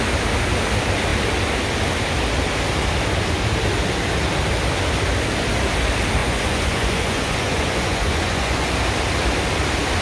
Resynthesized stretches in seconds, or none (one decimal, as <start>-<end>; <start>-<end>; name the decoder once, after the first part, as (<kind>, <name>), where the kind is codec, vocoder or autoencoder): 6.2-8.7 (vocoder, Vocos)